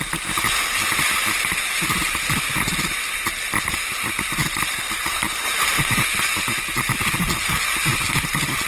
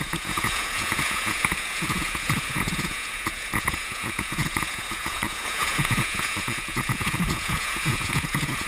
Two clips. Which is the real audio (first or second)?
first